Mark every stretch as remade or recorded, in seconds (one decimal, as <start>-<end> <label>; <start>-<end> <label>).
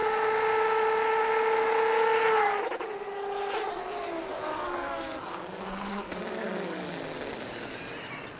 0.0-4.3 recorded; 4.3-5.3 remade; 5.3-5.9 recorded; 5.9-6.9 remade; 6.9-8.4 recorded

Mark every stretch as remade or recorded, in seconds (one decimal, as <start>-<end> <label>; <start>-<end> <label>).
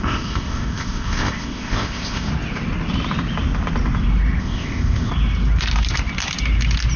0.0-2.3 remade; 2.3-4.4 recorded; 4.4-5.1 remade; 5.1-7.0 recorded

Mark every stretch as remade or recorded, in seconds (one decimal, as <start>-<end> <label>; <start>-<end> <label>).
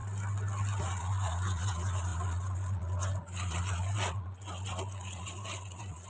0.0-0.8 recorded; 0.8-6.1 remade